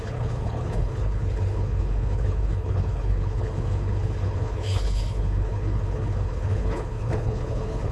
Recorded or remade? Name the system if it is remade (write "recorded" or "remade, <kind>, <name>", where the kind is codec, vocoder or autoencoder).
remade, codec, HILCodec